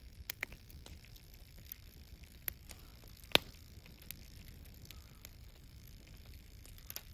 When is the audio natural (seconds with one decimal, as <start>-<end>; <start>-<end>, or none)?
0.0-7.1